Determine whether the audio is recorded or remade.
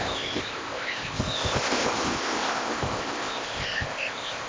remade